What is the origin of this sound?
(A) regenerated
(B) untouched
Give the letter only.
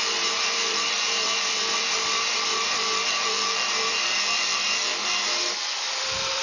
A